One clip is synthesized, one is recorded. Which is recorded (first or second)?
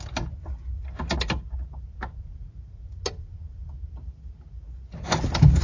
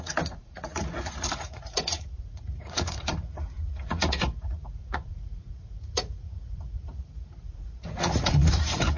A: first